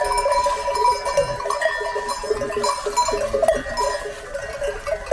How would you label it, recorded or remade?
recorded